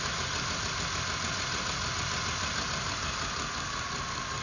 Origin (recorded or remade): recorded